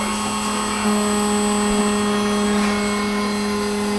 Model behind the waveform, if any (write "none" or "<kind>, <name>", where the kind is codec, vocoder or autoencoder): none